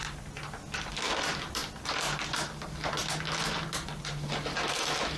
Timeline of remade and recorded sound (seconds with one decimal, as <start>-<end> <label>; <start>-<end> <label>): 0.0-5.2 recorded